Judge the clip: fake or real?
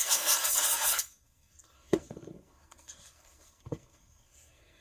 fake